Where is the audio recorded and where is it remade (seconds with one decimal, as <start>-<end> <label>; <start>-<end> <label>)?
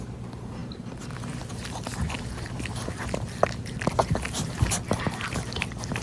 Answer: 0.0-6.0 recorded